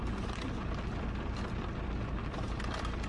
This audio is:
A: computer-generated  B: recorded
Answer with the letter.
B